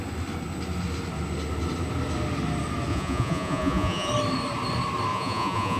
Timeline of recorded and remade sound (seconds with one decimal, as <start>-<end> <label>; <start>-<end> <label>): 0.0-2.9 recorded; 2.9-4.1 remade; 4.1-5.1 recorded; 5.1-5.8 remade